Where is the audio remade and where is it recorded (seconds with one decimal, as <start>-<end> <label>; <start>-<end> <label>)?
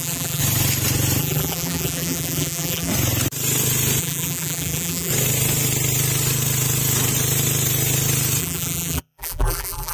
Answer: 0.0-0.4 remade; 0.4-1.2 recorded; 1.2-2.9 remade; 2.9-4.0 recorded; 4.0-5.1 remade; 5.1-8.4 recorded; 8.4-9.9 remade